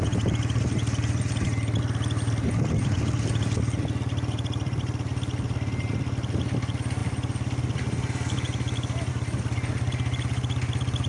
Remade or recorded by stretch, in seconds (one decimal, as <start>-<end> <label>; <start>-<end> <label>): 0.0-11.1 recorded